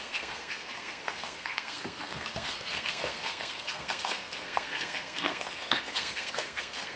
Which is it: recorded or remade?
remade